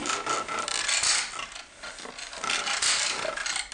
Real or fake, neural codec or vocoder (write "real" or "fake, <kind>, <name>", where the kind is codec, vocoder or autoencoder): real